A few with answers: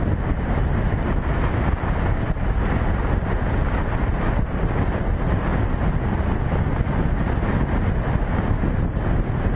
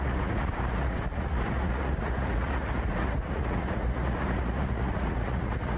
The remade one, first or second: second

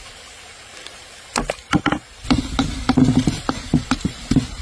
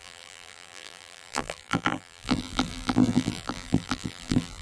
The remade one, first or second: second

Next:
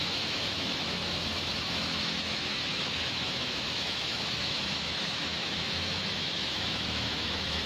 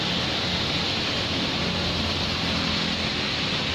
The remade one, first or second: first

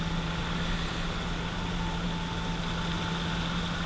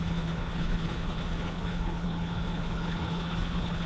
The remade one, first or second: second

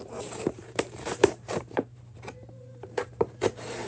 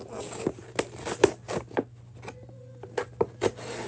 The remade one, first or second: first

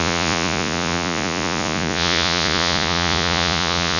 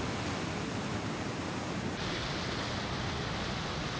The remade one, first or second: first